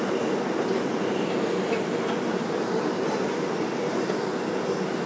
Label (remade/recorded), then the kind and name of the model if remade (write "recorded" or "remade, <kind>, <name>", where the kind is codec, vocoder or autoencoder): recorded